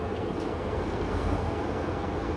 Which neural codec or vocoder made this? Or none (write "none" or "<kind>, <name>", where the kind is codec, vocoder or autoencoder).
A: codec, SNAC